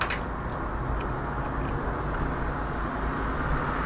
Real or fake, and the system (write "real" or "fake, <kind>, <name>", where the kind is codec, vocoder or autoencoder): real